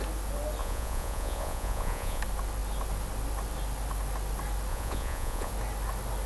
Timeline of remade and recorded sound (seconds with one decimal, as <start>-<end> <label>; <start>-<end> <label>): 0.0-0.6 recorded; 0.6-2.2 remade; 2.2-4.7 recorded; 4.7-5.5 remade; 5.5-6.3 recorded